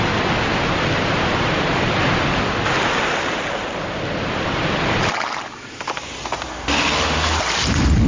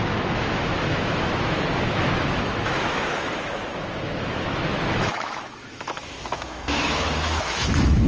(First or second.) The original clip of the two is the first